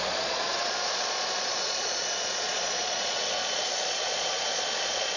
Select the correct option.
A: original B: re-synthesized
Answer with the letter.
B